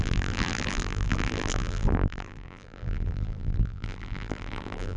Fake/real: fake